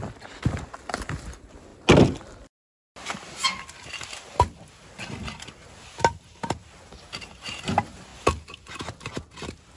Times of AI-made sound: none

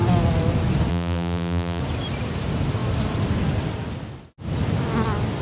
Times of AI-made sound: 0.9-1.8

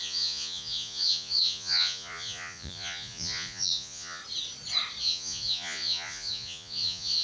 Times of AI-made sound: 0.0-4.2; 5.0-7.2

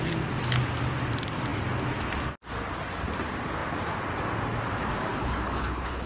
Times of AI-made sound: 5.1-6.1